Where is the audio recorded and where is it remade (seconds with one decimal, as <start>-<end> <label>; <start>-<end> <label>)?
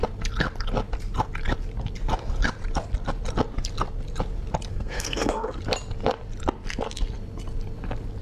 0.0-4.7 recorded; 4.7-5.6 remade; 5.6-8.2 recorded